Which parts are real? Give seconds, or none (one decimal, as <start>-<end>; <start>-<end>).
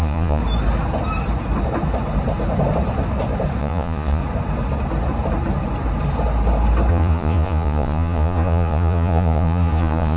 0.4-3.6; 4.2-6.9